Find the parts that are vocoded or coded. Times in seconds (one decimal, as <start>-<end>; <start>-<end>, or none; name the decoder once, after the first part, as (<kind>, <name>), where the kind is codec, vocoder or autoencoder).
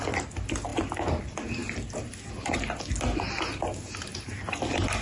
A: 4.1-4.6 (vocoder, BigVGAN v2)